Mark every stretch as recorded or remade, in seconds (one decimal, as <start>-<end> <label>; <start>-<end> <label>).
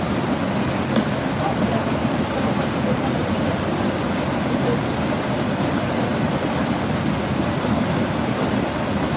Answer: 0.0-9.2 recorded